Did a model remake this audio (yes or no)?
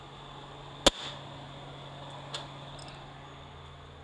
no